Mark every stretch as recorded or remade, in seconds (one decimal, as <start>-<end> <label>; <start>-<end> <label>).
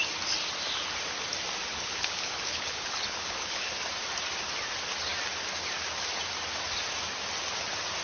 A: 0.0-1.7 recorded; 1.7-3.7 remade; 3.7-8.0 recorded